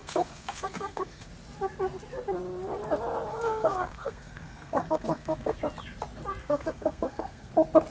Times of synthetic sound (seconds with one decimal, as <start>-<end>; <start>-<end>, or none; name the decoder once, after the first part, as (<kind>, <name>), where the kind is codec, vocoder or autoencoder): 0.0-1.3 (codec, SNAC); 3.3-5.6; 6.4-7.5